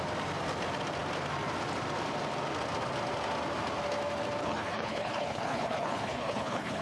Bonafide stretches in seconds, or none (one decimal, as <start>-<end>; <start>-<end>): 0.0-4.4